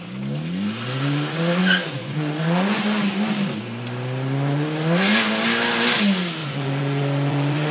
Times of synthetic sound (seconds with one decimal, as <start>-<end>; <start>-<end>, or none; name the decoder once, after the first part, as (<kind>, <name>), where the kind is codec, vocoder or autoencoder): 1.6-2.8 (vocoder, Vocos); 6.4-7.7